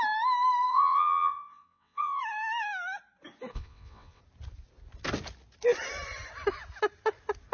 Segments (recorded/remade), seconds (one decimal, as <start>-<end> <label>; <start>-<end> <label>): 0.0-0.7 recorded; 0.7-2.2 remade; 2.2-3.5 recorded; 3.5-4.2 remade; 4.2-7.5 recorded